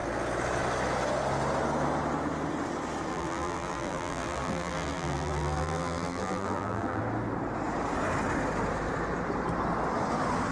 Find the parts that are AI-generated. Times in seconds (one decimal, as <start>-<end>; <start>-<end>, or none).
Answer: 3.1-7.0